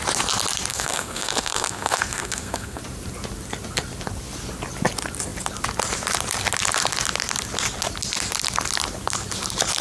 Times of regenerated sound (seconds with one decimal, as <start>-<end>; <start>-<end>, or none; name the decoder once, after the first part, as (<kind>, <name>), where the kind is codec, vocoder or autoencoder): 0.7-2.8 (codec, SNAC)